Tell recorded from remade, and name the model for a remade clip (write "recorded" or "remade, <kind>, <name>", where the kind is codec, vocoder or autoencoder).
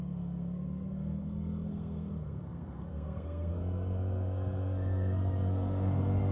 remade, codec, SNAC